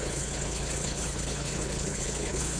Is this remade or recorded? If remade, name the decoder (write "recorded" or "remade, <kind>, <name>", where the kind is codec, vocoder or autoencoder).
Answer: remade, codec, HILCodec